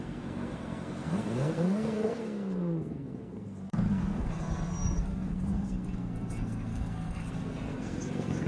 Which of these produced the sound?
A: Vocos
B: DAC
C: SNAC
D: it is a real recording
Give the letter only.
C